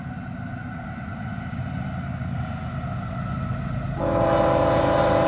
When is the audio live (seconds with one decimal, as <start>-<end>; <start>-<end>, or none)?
0.0-5.3